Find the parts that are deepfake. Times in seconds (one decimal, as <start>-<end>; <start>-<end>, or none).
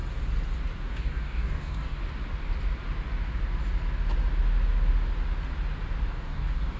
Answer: 0.8-2.0; 6.1-6.8